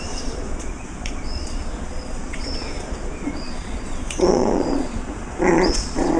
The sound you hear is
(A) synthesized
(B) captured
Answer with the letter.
A